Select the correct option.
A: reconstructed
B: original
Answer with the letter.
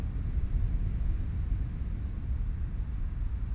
B